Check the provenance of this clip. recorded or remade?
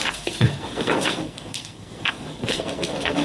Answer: remade